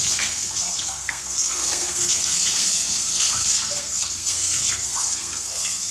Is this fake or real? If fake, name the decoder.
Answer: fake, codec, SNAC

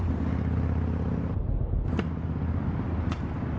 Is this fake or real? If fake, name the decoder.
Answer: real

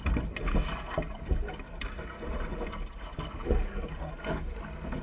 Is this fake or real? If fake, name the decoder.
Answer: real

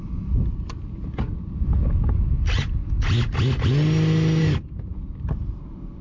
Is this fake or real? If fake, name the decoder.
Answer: real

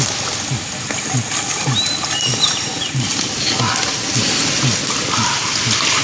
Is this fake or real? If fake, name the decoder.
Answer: real